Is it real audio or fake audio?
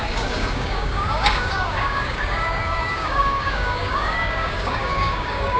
fake